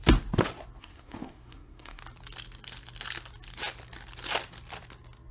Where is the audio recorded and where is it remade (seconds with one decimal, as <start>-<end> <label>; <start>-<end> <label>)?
0.0-0.8 recorded; 0.8-2.0 remade; 2.0-5.3 recorded

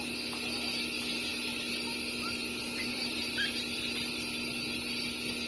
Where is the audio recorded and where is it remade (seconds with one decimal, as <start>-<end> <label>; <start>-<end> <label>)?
0.0-5.5 recorded

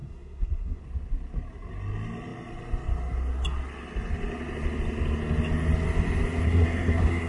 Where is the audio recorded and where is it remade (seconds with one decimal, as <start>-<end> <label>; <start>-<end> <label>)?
0.0-0.8 remade; 0.8-6.4 recorded; 6.4-7.3 remade

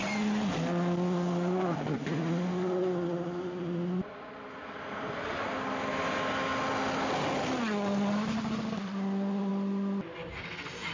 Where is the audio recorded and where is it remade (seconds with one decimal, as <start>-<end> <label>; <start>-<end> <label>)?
0.0-10.9 recorded

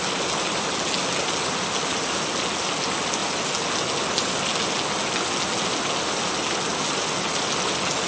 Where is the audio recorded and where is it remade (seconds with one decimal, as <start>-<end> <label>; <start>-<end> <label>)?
0.0-8.1 recorded